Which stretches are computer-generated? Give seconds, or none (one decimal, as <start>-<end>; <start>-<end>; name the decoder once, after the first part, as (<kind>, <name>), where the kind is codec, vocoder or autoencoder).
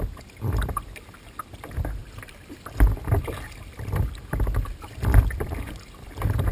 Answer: 0.0-6.5 (vocoder, BigVGAN v2)